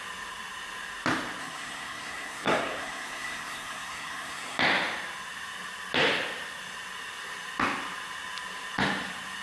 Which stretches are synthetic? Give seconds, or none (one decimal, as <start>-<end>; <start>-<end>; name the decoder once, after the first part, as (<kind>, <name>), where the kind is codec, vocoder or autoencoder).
1.4-4.6 (codec, SNAC)